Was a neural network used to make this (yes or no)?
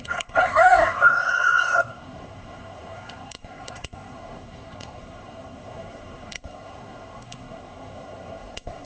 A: yes